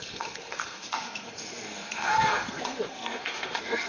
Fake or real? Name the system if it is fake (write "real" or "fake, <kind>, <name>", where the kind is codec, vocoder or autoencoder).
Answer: fake, codec, SNAC